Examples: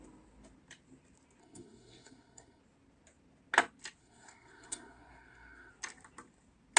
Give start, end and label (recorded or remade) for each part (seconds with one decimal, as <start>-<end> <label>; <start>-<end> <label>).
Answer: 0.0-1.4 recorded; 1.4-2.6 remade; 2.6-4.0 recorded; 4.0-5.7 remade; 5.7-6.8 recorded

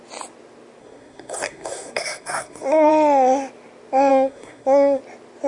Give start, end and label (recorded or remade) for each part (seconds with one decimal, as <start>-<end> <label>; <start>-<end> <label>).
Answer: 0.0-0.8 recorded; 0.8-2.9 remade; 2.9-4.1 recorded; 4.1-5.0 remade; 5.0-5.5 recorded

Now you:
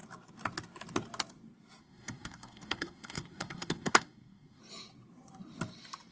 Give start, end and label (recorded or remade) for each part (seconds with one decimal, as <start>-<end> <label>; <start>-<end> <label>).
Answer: 0.0-1.8 recorded; 1.8-4.6 remade; 4.6-6.1 recorded

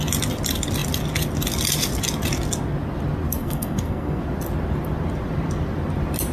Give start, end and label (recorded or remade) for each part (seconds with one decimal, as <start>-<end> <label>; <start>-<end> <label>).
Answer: 0.0-3.4 recorded; 3.4-4.2 remade; 4.2-6.3 recorded

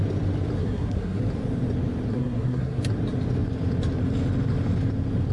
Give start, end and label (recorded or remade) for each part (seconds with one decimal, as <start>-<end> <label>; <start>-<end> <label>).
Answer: 0.0-0.6 recorded; 0.6-1.2 remade; 1.2-2.1 recorded; 2.1-2.8 remade; 2.8-5.3 recorded

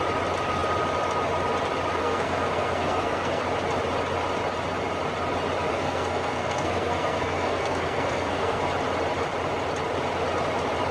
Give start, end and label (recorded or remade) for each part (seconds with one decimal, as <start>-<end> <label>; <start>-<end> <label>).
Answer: 0.0-2.0 recorded; 2.0-3.4 remade; 3.4-5.7 recorded; 5.7-8.6 remade; 8.6-10.9 recorded

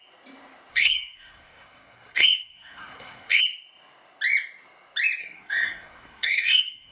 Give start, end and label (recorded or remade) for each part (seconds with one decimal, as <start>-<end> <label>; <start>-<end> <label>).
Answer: 0.0-0.7 recorded; 0.7-3.4 remade; 3.4-5.2 recorded; 5.2-6.9 remade